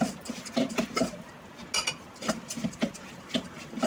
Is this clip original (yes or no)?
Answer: yes